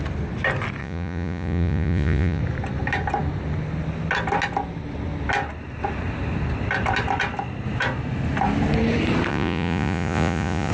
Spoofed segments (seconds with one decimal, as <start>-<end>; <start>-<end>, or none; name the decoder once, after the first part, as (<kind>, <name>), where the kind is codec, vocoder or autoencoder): 0.8-2.4 (vocoder, Vocos); 9.3-10.7